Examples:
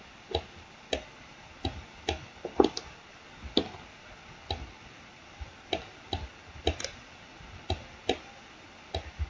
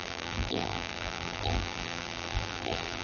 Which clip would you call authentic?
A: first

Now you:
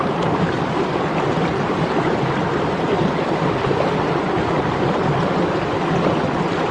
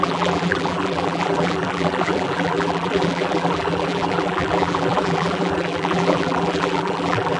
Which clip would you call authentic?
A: first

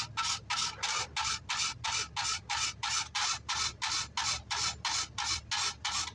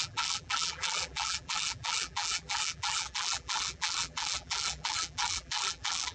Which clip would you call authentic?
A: first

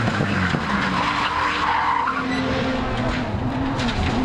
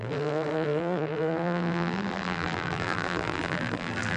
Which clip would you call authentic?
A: first